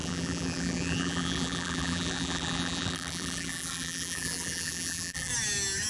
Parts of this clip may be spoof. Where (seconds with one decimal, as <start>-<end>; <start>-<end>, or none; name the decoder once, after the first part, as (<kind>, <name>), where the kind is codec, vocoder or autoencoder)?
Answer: 0.0-5.3 (vocoder, BigVGAN v2)